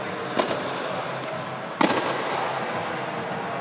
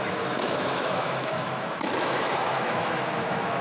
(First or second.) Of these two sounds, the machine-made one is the second